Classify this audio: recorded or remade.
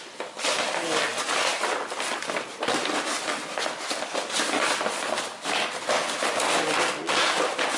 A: recorded